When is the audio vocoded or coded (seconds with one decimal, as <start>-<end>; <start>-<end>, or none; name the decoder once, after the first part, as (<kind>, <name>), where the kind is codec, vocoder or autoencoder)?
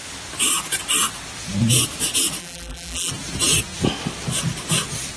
2.4-3.1 (vocoder, BigVGAN v2)